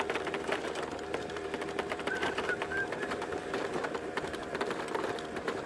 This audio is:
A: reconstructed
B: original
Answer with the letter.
A